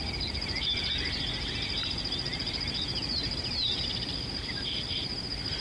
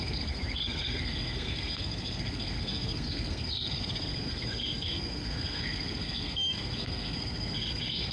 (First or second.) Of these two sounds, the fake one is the second